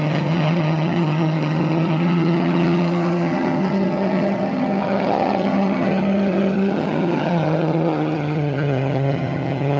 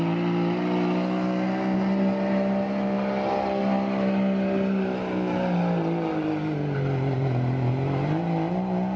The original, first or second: second